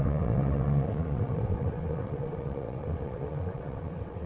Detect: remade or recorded remade